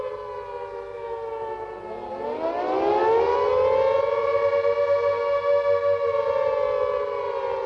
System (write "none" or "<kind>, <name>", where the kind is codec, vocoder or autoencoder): none